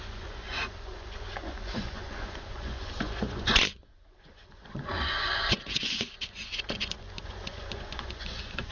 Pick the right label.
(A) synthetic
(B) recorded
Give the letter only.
A